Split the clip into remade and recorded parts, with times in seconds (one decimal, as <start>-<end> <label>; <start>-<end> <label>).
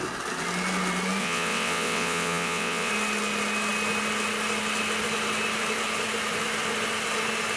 0.0-1.2 recorded; 1.2-2.9 remade; 2.9-7.6 recorded